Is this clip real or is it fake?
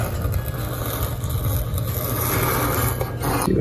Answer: real